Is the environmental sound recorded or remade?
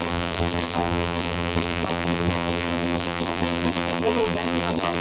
remade